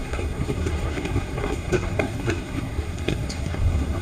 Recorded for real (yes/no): no